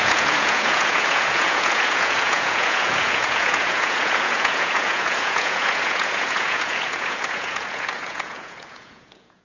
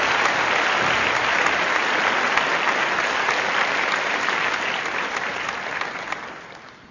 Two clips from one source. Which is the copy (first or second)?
first